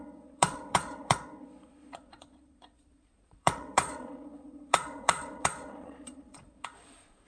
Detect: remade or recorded remade